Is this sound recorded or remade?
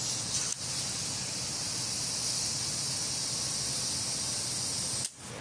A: recorded